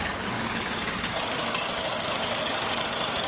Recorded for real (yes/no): no